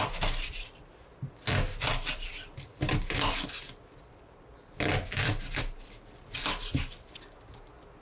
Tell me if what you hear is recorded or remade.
recorded